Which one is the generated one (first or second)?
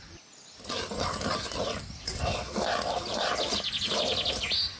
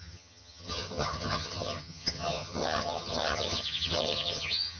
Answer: second